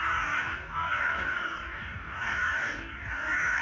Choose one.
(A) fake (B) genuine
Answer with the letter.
A